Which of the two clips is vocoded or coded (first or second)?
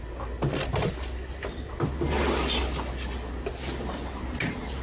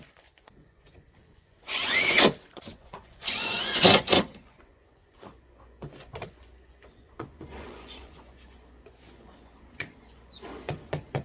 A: second